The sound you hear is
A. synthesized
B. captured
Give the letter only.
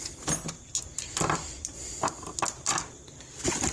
B